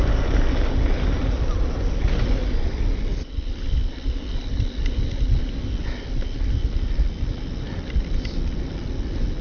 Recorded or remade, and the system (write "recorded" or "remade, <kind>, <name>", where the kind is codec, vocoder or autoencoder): recorded